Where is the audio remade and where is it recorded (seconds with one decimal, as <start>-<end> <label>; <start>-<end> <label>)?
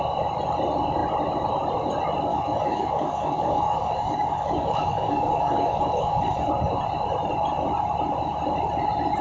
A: 0.0-2.3 recorded; 2.3-6.5 remade; 6.5-9.2 recorded